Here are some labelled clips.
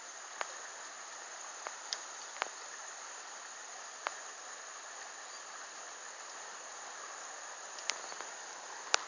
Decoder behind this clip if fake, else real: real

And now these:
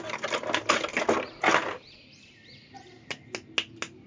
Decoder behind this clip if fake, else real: real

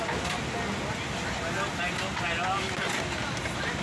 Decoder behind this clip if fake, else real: real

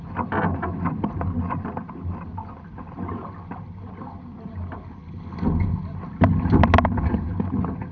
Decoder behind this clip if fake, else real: real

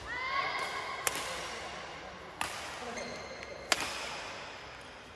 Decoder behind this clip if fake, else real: real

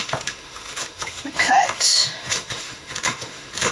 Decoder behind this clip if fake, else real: fake, autoencoder, DAC-VAE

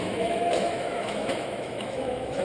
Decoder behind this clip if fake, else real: fake, autoencoder, DAC-VAE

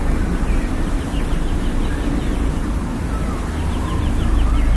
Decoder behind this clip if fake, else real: real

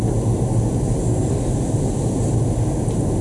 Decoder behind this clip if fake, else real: real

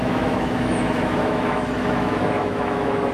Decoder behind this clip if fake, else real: fake, autoencoder, DAC-VAE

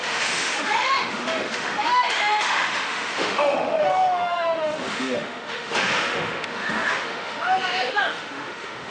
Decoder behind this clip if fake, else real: fake, autoencoder, DAC-VAE